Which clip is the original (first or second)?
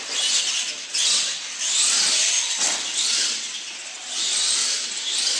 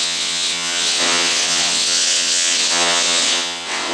first